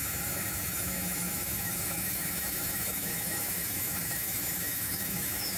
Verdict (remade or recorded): remade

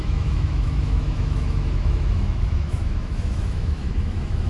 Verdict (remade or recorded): remade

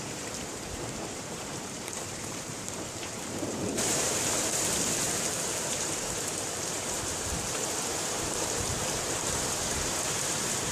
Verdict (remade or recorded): remade